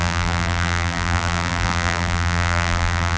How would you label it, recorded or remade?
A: remade